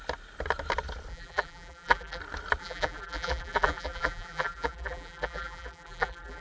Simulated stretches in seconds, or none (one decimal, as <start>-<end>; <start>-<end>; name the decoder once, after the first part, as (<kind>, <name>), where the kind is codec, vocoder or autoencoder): 1.1-2.2 (vocoder, BigVGAN v2); 2.6-6.4